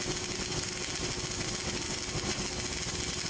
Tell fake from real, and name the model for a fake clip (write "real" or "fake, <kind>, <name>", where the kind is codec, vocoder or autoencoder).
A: real